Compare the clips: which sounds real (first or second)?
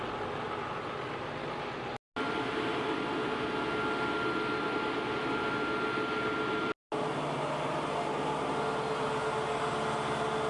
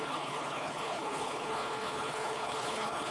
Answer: first